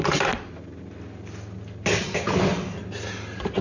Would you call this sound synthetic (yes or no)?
no